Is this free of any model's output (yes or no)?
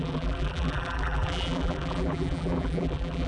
no